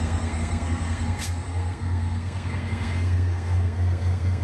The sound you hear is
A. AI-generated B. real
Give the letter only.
A